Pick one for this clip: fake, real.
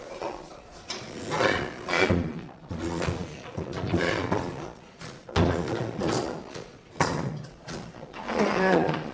fake